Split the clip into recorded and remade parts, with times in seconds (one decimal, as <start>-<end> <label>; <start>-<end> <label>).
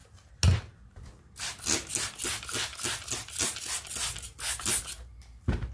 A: 0.0-5.7 recorded